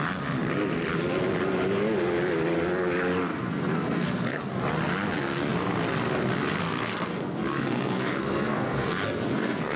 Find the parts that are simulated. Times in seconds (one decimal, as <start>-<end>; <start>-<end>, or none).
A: 3.3-4.4; 6.6-9.8